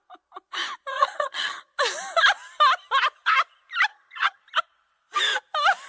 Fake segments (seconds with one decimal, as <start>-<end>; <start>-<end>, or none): 0.9-1.7; 3.9-4.4